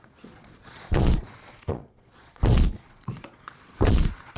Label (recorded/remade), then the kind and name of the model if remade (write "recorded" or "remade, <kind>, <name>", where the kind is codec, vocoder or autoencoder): remade, vocoder, Vocos